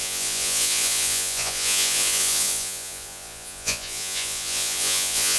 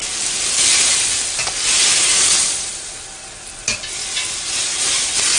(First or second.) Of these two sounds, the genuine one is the second